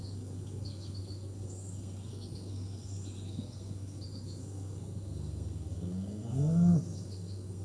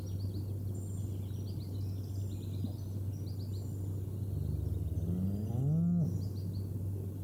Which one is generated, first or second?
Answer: first